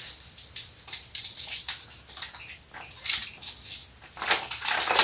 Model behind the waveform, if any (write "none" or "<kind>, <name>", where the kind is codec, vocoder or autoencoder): none